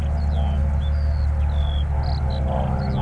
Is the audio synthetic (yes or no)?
no